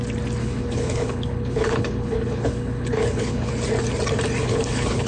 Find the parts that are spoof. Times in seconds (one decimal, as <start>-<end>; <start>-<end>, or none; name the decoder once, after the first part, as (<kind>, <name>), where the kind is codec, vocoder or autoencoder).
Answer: 0.4-3.5 (codec, HILCodec); 4.4-5.1